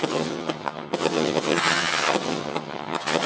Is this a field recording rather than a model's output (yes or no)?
no